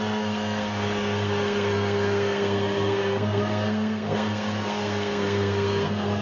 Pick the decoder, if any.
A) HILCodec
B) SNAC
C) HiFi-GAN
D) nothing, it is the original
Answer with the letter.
B